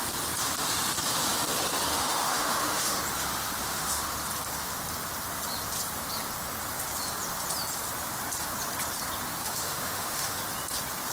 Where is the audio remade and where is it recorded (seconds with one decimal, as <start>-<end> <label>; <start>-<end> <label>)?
0.0-1.9 recorded; 1.9-3.0 remade; 3.0-3.6 recorded; 3.6-4.1 remade; 4.1-9.4 recorded; 9.4-10.4 remade; 10.4-11.1 recorded